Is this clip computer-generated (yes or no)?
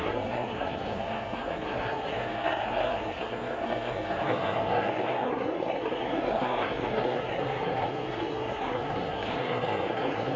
yes